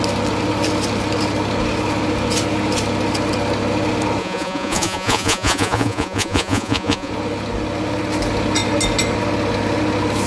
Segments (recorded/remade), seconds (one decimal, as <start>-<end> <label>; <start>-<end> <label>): 0.0-4.2 recorded; 4.2-7.1 remade; 7.1-10.3 recorded